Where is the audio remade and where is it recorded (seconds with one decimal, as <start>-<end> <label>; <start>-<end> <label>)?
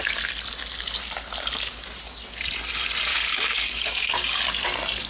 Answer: 0.0-3.1 recorded; 3.1-4.4 remade; 4.4-5.1 recorded